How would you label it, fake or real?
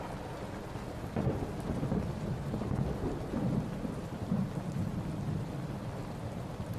real